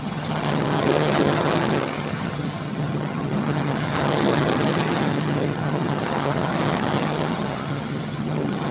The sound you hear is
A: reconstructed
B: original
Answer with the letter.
A